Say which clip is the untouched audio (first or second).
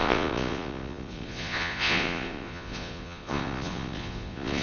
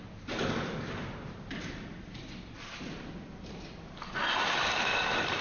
second